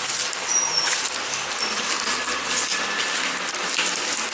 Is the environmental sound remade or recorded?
recorded